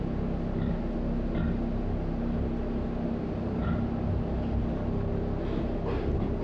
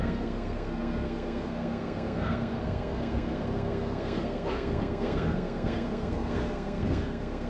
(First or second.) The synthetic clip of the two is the second